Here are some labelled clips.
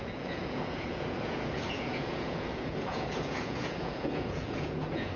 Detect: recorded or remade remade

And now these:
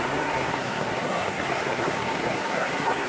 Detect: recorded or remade remade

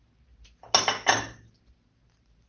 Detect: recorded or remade recorded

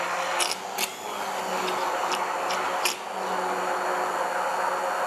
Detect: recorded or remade recorded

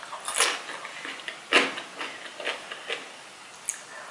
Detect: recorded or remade recorded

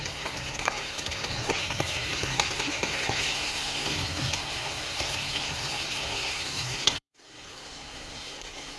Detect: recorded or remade remade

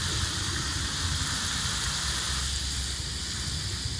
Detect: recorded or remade recorded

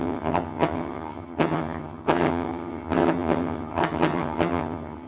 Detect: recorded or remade remade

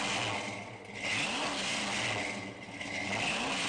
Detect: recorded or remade recorded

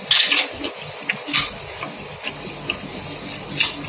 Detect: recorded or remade recorded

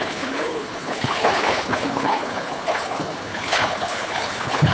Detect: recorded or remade remade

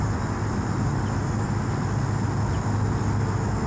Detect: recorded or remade recorded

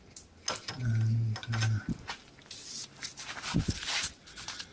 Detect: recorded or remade recorded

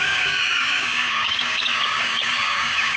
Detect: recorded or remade remade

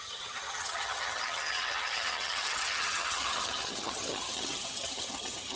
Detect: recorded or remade remade